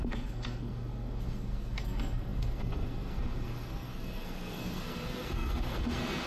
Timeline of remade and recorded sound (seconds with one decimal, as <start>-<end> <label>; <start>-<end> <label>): 0.0-6.3 remade